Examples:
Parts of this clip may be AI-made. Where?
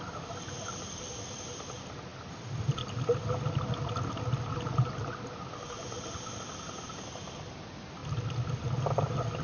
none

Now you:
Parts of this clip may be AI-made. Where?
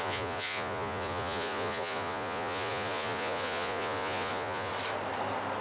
0.0-4.7 (vocoder, Vocos)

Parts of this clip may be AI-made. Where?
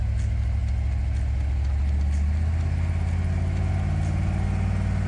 none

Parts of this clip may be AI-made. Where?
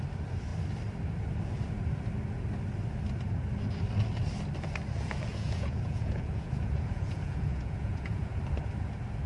5.3-8.4 (vocoder, Vocos)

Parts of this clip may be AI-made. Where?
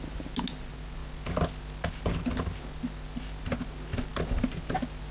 none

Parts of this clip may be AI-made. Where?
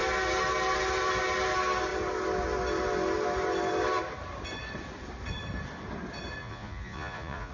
6.4-7.5 (vocoder, Vocos)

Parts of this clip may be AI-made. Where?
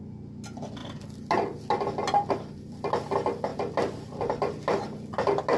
none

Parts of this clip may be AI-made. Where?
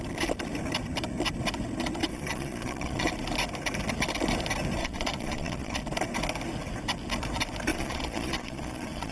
2.1-3.1 (vocoder, Vocos); 4.8-5.8; 7.7-9.1